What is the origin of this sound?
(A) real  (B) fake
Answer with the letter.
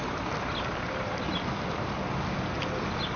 A